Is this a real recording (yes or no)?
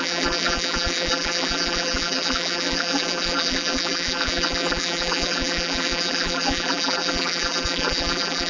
no